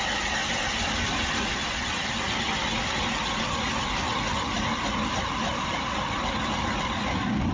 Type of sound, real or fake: real